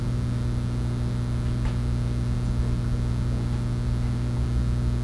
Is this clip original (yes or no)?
yes